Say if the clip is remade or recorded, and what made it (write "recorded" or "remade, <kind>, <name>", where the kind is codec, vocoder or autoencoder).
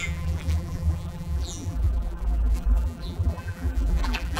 remade, vocoder, BigVGAN v2